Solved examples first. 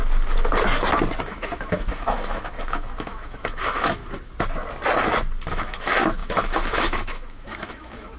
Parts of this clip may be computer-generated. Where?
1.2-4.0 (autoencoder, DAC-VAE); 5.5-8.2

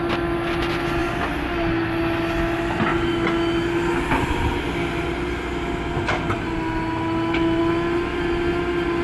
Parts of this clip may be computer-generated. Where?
none

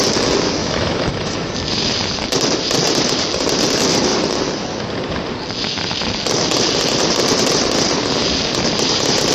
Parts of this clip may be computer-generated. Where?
0.6-1.5 (autoencoder, DAC-VAE)

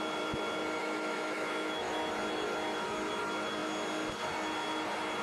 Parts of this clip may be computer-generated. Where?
0.8-1.9 (autoencoder, DAC-VAE)